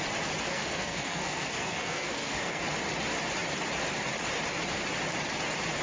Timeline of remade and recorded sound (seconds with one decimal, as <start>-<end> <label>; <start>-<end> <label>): 0.0-0.5 recorded; 0.5-2.6 remade; 2.6-5.8 recorded